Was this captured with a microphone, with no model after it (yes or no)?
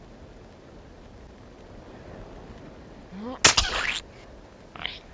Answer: yes